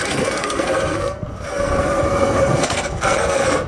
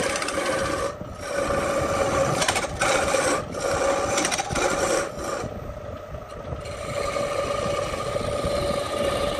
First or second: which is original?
second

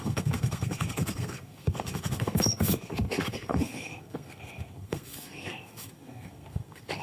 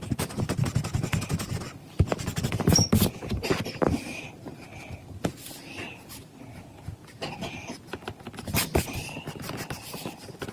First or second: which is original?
second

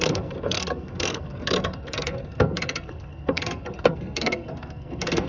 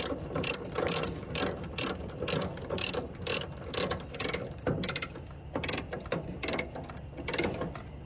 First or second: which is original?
second